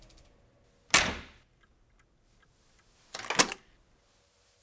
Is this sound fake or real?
real